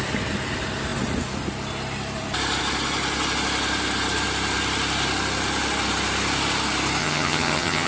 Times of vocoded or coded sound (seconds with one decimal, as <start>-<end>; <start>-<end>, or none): 7.0-7.9